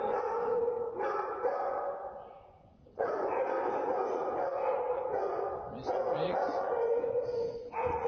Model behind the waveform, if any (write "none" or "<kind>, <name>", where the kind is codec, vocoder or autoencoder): vocoder, Vocos